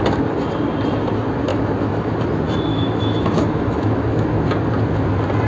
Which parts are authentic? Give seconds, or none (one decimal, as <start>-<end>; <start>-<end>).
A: 0.0-1.5; 2.1-2.7; 4.5-5.5